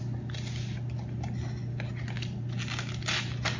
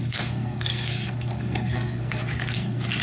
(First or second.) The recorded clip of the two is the first